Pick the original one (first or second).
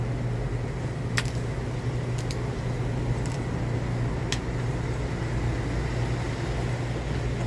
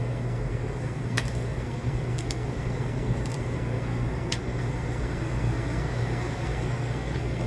first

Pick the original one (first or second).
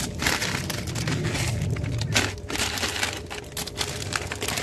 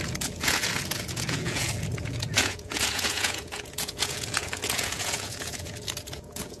first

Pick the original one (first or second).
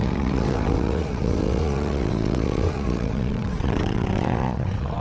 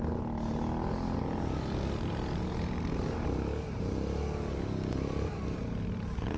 second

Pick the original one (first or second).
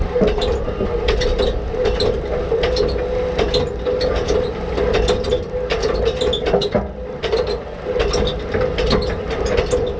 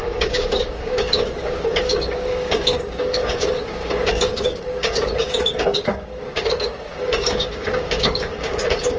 first